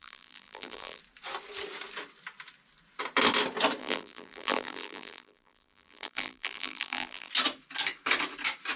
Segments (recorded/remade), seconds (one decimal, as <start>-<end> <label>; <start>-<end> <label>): 0.0-1.0 remade; 1.0-3.8 recorded; 3.8-7.3 remade; 7.3-8.8 recorded